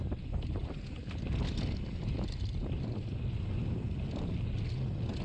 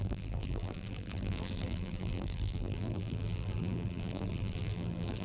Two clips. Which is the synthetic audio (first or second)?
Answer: second